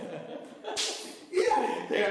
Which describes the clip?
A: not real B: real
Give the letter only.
A